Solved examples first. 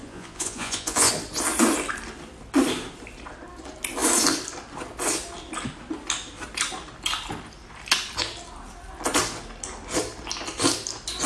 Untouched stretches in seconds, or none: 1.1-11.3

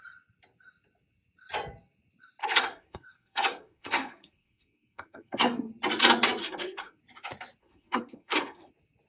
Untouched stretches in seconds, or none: 0.0-2.4; 5.7-6.4; 7.0-7.6; 8.7-9.1

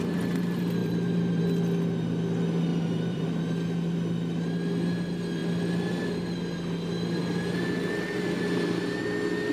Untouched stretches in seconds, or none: 0.0-0.8; 1.4-2.7; 3.3-9.5

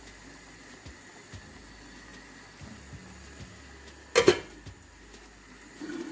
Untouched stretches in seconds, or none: 0.0-6.1